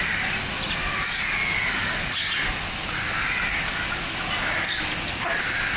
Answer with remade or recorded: recorded